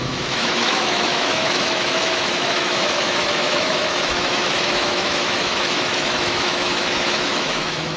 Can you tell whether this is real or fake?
fake